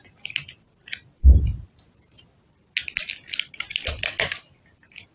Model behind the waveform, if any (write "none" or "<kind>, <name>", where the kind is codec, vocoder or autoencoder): none